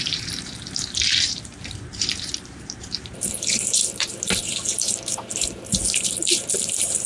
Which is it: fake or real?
fake